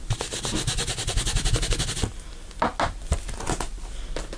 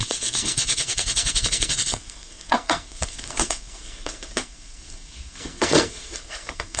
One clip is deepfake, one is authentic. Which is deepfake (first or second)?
second